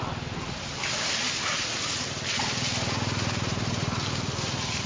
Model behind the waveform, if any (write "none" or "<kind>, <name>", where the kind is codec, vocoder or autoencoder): none